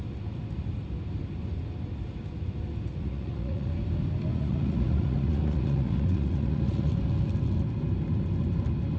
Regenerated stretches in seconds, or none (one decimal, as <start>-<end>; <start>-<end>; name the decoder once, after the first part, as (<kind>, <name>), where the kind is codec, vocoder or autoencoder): 2.9-3.7 (vocoder, Vocos); 4.3-6.9